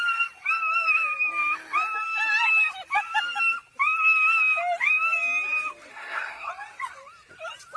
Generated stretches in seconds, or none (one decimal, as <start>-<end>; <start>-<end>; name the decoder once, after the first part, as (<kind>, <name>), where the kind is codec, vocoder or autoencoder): 5.9-6.5 (codec, SNAC)